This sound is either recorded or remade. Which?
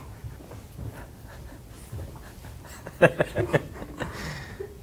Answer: recorded